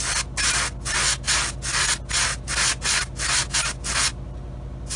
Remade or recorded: recorded